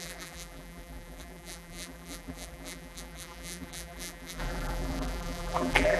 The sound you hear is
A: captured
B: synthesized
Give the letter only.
B